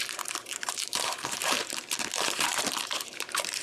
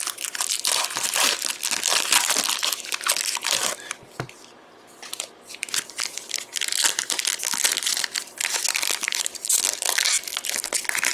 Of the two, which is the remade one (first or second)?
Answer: first